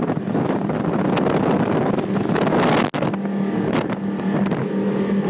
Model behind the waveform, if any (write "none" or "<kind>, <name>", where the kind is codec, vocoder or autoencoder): none